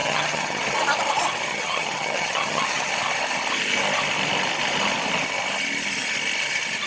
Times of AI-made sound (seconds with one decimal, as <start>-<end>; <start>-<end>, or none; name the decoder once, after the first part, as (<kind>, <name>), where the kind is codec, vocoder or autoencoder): 0.0-0.6 (vocoder, HiFi-GAN); 1.5-2.9